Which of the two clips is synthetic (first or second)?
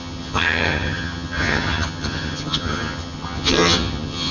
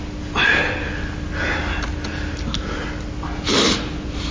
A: first